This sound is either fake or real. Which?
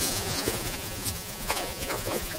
fake